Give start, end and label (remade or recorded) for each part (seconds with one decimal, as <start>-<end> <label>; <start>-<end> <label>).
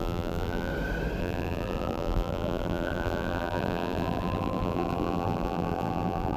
0.0-0.7 remade; 0.7-1.2 recorded; 1.2-6.4 remade